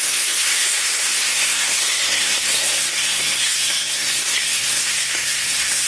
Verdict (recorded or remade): remade